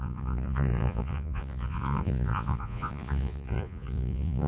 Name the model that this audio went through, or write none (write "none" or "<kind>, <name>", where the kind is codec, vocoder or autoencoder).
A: vocoder, Vocos